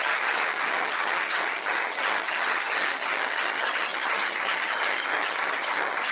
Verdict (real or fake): fake